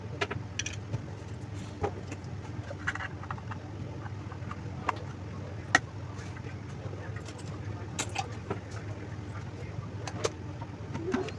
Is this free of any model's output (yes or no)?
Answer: yes